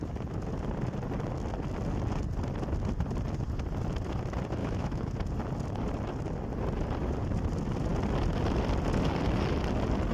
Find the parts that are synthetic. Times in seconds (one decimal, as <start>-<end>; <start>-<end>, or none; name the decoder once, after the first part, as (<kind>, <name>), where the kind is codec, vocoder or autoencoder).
4.6-5.1 (autoencoder, DAC-VAE)